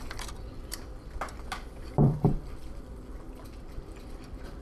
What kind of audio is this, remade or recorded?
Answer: remade